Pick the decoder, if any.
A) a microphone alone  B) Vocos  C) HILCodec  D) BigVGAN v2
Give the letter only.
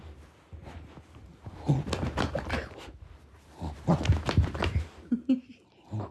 A